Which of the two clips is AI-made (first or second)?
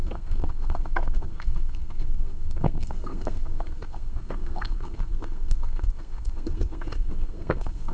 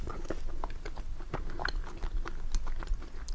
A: first